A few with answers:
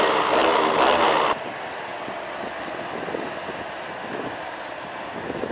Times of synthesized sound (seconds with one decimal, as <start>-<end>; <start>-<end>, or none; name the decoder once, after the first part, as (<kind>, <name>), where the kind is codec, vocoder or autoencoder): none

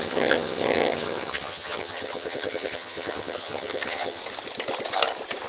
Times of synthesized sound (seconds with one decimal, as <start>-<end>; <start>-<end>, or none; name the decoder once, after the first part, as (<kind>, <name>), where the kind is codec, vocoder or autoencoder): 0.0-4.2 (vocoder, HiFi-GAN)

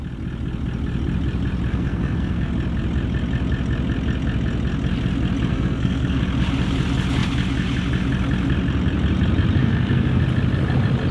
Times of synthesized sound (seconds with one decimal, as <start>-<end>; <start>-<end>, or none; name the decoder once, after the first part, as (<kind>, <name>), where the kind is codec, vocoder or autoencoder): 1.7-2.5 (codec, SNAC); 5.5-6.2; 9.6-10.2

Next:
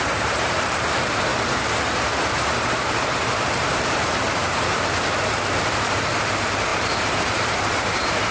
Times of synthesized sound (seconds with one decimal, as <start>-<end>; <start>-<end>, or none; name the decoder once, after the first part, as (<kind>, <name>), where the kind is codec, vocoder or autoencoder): 0.0-1.3 (vocoder, BigVGAN v2); 2.3-4.4; 5.3-8.3